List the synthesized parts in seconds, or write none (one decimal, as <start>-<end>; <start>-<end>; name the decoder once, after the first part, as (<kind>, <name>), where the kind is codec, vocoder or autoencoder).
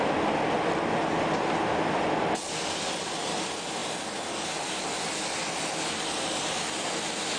none